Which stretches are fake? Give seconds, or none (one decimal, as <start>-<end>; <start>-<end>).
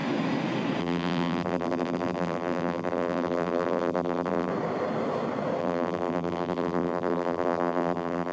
0.8-4.5; 5.6-8.3